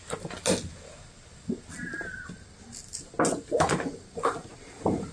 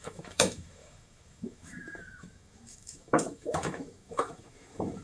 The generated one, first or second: second